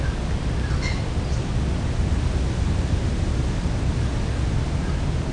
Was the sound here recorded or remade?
recorded